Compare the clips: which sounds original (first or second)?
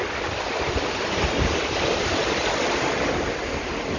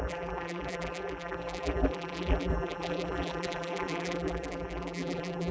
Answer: first